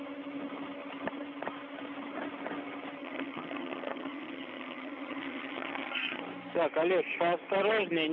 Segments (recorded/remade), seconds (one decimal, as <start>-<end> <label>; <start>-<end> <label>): 0.0-3.0 recorded; 3.0-6.2 remade; 6.2-8.1 recorded